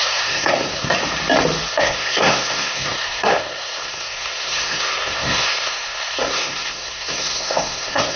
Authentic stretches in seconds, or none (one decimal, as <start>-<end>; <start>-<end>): 0.9-1.7